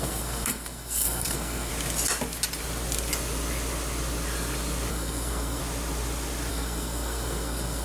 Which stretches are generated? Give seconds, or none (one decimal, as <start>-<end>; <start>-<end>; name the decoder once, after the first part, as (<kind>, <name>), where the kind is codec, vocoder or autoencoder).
0.0-1.7 (codec, SNAC); 4.9-5.6; 6.5-7.8